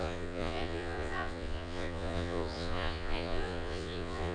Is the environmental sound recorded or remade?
remade